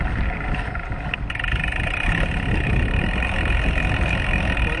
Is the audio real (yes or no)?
yes